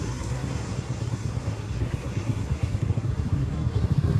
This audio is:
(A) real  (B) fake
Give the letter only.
B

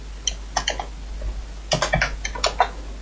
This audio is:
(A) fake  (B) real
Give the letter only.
B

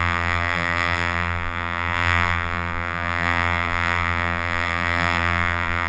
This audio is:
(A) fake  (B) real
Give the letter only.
A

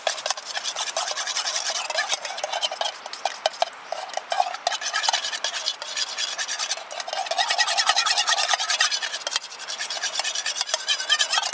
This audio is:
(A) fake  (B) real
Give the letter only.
B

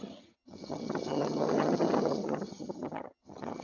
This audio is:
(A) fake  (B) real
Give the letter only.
A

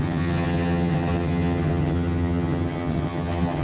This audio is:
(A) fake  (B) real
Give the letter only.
A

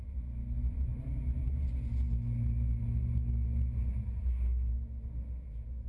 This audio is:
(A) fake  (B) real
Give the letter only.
B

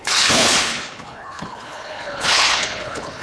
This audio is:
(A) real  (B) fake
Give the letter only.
B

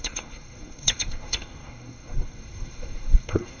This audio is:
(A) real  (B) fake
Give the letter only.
B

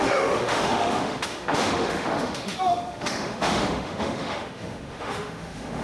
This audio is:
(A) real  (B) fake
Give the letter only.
B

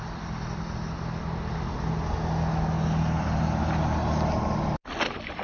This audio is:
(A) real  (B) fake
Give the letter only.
A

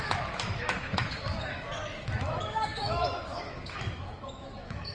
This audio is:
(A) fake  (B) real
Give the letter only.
A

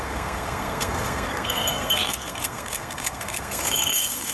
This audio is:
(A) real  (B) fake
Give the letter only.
B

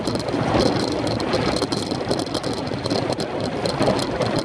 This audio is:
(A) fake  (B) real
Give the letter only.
A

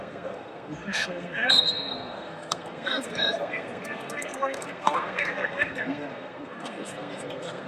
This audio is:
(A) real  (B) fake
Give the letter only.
B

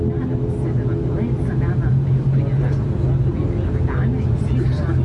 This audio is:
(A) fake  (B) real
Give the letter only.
B